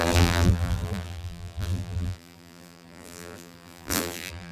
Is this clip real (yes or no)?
no